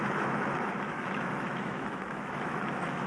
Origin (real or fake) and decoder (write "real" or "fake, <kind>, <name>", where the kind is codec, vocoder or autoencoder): fake, autoencoder, DAC-VAE